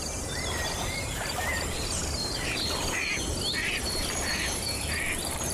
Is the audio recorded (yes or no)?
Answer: no